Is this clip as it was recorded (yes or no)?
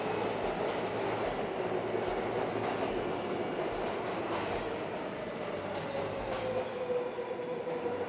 yes